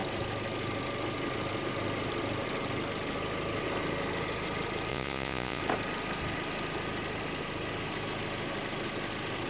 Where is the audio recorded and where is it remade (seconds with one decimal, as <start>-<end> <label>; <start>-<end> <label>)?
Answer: 0.0-4.9 recorded; 4.9-5.6 remade; 5.6-9.5 recorded